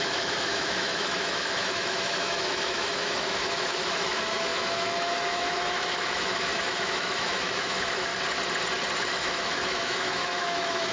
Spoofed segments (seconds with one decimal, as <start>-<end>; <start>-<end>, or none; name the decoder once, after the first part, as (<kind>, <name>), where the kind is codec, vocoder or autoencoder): 0.0-8.1 (autoencoder, DAC-VAE); 9.1-10.9